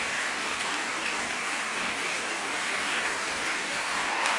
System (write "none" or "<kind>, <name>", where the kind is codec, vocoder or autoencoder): codec, DAC